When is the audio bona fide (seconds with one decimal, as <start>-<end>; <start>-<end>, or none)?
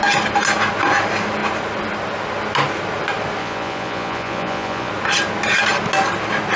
0.0-3.4; 4.9-6.6